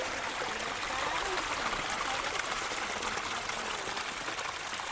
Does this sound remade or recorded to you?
recorded